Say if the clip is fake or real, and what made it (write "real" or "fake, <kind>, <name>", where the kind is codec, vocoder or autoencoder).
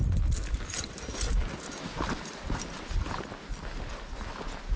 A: real